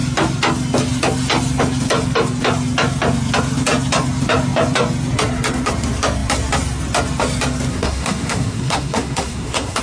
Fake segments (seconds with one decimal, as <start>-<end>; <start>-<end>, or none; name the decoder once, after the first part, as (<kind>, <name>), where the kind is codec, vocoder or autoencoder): 7.7-9.8 (codec, SNAC)